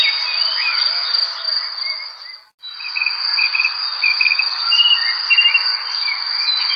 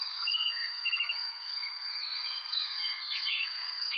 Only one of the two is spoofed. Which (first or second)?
second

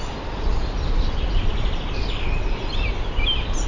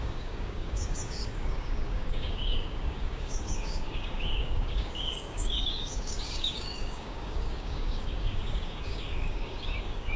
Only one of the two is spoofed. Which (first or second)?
second